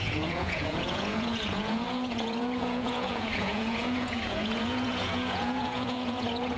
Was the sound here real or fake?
fake